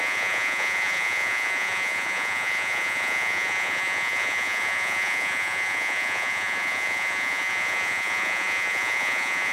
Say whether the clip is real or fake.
fake